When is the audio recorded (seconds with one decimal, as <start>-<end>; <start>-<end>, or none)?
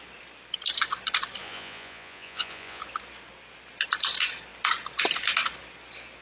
0.0-1.4; 2.8-6.2